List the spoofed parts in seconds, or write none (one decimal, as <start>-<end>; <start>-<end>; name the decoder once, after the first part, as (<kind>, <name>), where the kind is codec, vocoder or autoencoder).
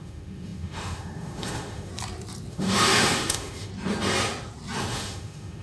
0.0-1.9 (autoencoder, DAC-VAE); 2.5-3.7; 4.8-5.6